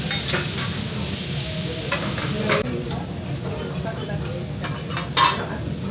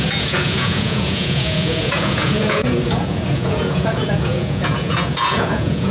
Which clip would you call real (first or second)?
first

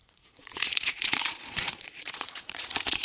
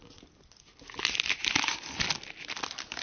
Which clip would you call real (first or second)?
second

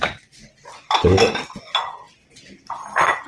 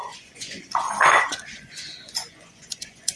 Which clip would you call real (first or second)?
first